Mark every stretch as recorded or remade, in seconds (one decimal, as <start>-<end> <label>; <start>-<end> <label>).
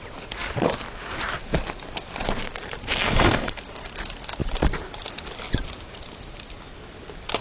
0.0-3.0 recorded; 3.0-3.6 remade; 3.6-7.4 recorded